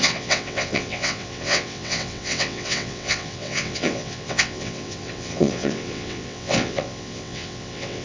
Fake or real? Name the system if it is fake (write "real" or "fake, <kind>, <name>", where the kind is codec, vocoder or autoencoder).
fake, vocoder, WaveNeXt